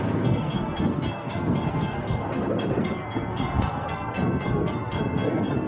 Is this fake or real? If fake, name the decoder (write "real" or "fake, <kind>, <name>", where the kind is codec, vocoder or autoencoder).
fake, codec, SNAC